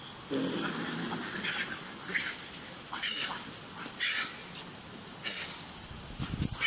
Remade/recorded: recorded